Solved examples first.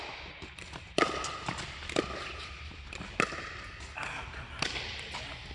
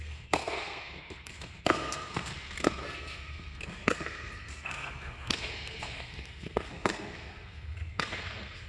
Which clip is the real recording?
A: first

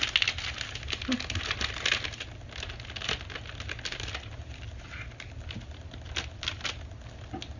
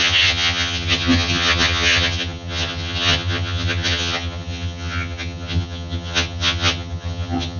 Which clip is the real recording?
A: first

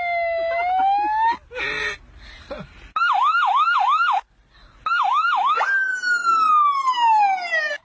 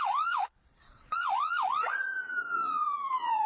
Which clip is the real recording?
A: first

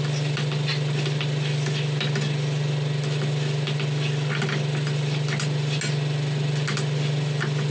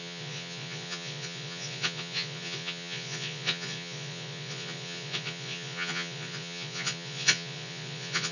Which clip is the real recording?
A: first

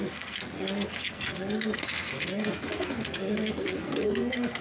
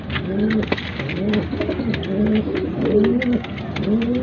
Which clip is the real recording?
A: second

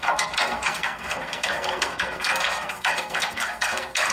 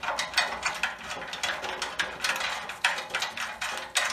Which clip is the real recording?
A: second